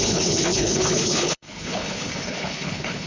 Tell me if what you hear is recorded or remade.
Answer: remade